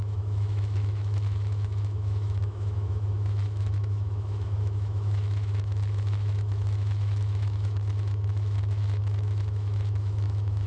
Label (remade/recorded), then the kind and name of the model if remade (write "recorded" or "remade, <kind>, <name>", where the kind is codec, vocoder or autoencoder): remade, autoencoder, DAC-VAE